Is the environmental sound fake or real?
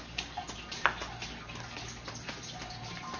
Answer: real